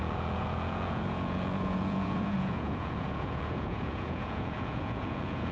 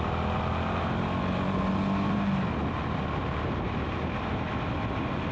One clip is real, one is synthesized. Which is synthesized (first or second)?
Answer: first